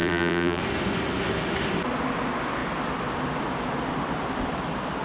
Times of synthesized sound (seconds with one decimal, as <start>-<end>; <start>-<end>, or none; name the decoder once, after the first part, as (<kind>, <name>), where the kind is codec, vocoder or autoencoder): 0.0-0.6 (vocoder, BigVGAN v2)

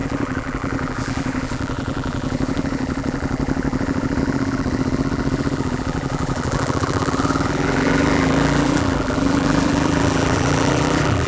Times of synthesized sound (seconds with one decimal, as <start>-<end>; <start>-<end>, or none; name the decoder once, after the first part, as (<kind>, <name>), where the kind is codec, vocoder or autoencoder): 0.0-11.3 (vocoder, BigVGAN v2)

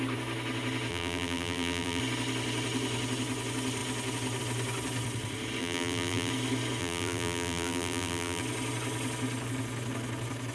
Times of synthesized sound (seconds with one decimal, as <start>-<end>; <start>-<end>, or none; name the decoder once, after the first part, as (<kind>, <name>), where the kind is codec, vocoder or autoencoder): 0.9-2.0 (vocoder, BigVGAN v2); 5.6-6.3; 6.8-8.4

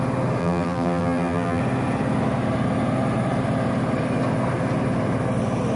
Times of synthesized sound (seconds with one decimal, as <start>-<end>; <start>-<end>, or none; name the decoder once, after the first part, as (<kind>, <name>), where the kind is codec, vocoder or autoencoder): 0.4-1.6 (vocoder, BigVGAN v2)

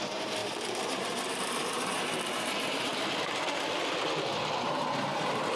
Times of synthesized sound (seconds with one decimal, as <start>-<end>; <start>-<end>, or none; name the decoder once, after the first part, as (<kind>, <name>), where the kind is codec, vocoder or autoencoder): 0.0-2.9 (vocoder, BigVGAN v2); 4.6-5.6